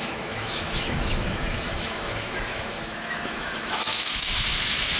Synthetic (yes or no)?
yes